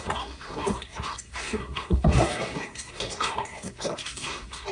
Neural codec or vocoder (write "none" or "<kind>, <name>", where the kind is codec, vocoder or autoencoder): codec, SNAC